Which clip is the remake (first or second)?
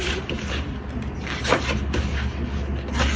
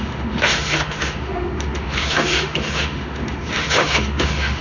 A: second